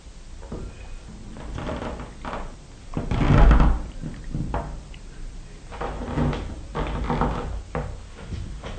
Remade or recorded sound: recorded